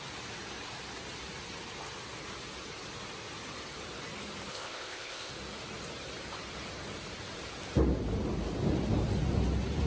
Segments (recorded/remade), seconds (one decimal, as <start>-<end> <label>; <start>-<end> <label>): 0.0-4.5 recorded; 4.5-5.3 remade; 5.3-9.9 recorded